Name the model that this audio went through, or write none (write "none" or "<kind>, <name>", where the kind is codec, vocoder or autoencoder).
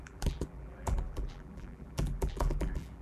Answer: vocoder, BigVGAN v2